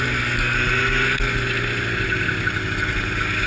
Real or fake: real